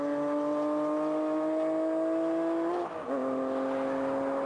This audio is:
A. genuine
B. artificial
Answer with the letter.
A